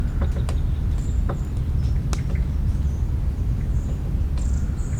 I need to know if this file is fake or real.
real